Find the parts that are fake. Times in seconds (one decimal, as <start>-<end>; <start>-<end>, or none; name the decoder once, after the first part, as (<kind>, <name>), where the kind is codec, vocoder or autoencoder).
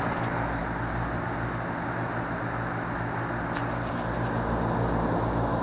none